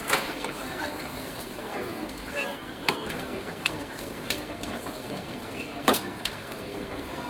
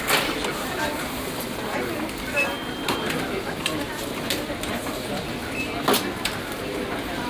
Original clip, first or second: second